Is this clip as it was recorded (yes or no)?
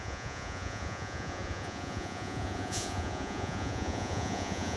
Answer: no